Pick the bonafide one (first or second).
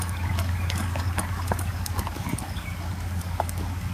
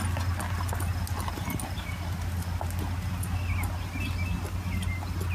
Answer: second